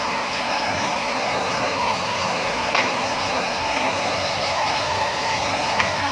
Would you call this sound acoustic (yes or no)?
no